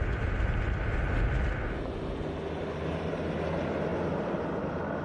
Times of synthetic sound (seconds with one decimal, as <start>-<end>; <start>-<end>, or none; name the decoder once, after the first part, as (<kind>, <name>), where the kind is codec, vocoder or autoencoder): none